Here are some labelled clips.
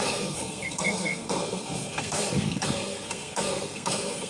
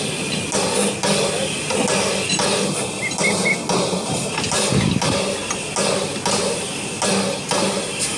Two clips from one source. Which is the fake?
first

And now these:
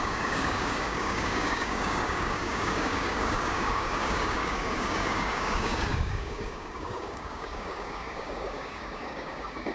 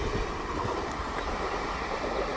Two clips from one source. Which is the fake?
first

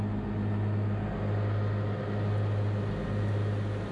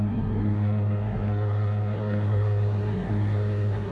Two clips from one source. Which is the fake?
second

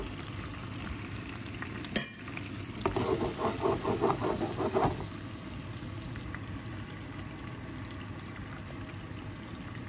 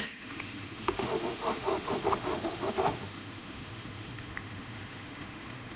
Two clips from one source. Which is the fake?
second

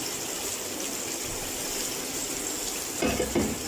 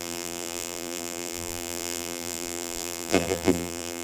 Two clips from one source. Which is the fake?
second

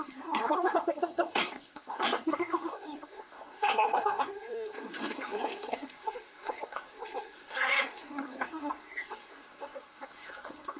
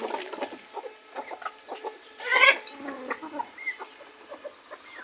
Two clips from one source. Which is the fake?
first